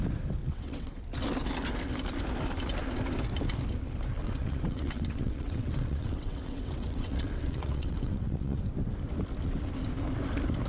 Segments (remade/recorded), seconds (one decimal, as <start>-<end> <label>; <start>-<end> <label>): 0.0-0.4 recorded; 0.4-1.0 remade; 1.0-4.2 recorded; 4.2-8.6 remade; 8.6-10.7 recorded